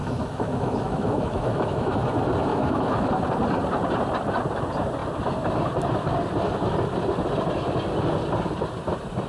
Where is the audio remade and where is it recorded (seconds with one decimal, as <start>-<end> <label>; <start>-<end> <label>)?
0.0-2.0 remade; 2.0-2.5 recorded; 2.5-3.1 remade; 3.1-9.3 recorded